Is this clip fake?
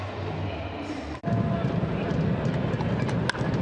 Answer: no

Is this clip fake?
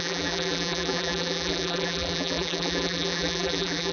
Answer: yes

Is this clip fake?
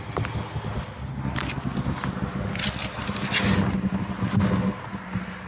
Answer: no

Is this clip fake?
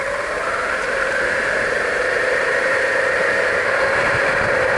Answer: yes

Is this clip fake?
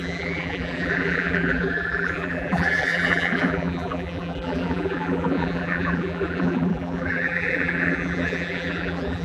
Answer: yes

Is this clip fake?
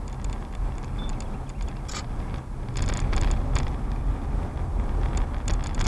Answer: no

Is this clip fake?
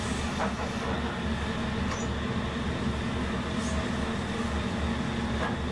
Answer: no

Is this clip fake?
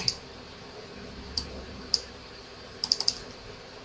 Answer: yes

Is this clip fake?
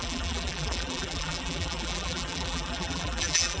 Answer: yes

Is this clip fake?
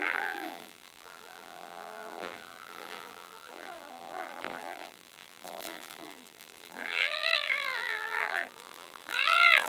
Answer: yes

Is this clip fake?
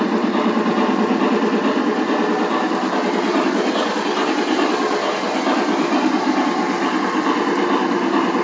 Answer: yes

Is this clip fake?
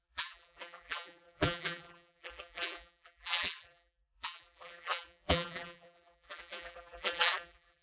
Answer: yes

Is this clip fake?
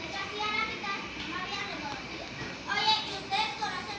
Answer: yes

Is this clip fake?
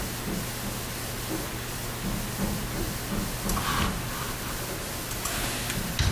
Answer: no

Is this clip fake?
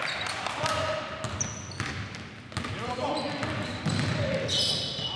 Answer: no